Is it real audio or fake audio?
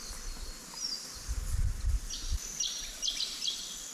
fake